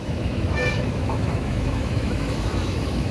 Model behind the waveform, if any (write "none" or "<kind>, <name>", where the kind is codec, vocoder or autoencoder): autoencoder, DAC-VAE